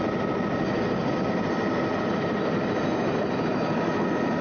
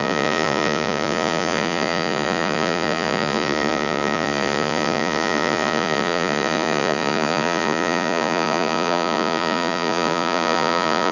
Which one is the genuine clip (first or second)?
first